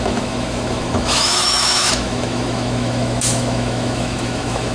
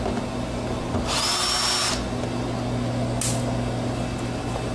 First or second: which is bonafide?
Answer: second